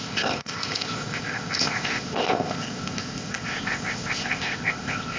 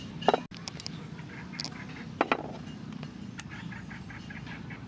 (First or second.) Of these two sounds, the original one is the second